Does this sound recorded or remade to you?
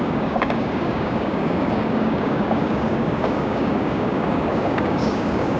remade